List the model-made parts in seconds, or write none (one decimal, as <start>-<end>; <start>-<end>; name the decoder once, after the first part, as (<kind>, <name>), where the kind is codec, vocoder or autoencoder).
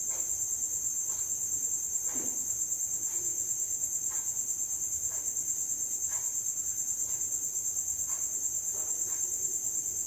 none